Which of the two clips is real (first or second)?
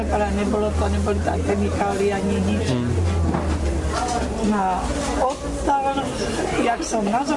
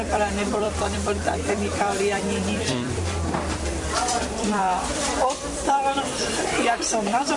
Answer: first